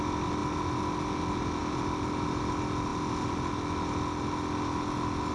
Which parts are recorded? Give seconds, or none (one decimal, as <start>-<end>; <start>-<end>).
0.0-5.3